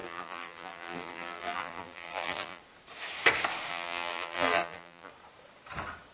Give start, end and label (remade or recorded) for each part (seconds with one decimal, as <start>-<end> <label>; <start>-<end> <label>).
0.0-2.6 remade; 2.6-3.7 recorded; 3.7-5.1 remade; 5.1-6.1 recorded